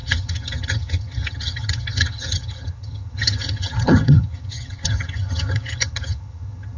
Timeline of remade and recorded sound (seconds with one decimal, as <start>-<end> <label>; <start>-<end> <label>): 0.0-6.8 remade